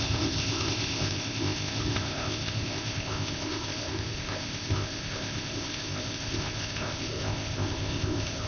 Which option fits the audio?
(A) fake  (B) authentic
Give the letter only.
A